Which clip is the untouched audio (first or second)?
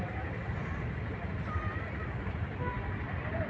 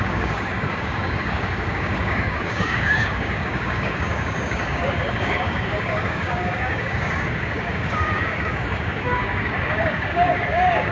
first